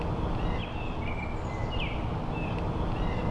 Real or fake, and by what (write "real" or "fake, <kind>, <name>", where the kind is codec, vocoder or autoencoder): real